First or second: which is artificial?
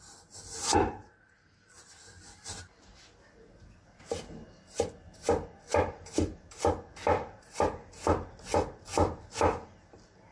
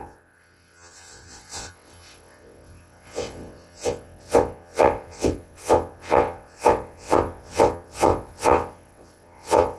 second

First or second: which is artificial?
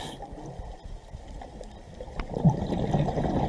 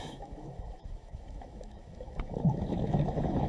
second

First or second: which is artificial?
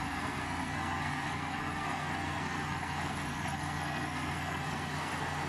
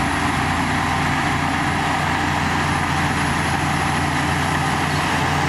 first